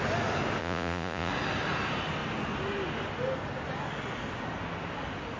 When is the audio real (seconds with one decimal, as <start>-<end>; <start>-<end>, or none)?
0.0-0.6; 1.3-5.4